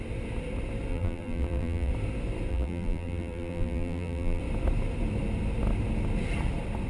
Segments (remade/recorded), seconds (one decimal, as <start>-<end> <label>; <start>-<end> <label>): 0.0-0.9 recorded; 0.9-1.9 remade; 1.9-2.5 recorded; 2.5-4.4 remade; 4.4-6.9 recorded